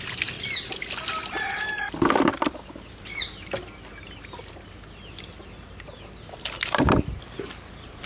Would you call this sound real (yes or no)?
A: yes